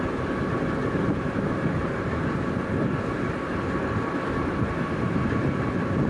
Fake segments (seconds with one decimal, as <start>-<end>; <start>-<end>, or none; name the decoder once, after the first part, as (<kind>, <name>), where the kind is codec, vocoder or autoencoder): 0.8-2.4 (vocoder, BigVGAN v2)